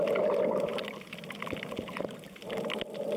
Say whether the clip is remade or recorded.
recorded